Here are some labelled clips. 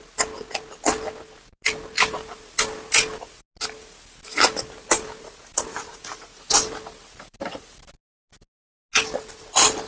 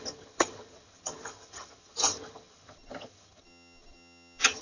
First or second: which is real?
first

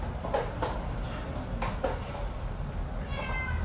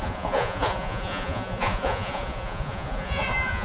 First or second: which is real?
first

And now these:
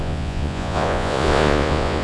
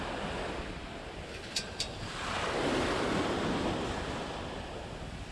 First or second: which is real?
second